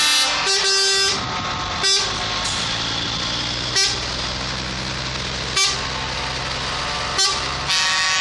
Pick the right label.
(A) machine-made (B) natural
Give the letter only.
B